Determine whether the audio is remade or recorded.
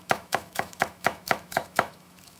remade